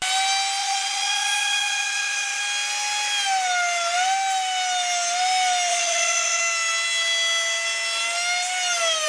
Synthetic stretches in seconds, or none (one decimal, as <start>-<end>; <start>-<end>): 0.6-2.4; 5.7-6.4